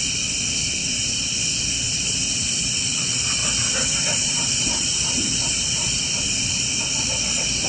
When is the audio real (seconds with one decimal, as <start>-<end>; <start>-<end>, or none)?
0.0-0.8; 1.3-3.4; 6.6-7.7